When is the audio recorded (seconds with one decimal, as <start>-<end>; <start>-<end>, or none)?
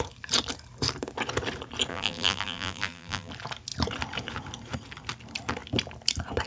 0.0-1.9; 3.3-6.5